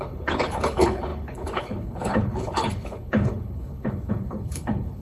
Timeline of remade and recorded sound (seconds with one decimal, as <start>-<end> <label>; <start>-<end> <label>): 0.0-5.0 remade